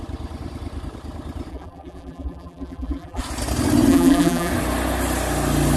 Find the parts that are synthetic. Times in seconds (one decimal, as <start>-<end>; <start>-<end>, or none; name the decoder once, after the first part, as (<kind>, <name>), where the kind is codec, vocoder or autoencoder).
1.5-3.2 (vocoder, BigVGAN v2); 3.9-4.5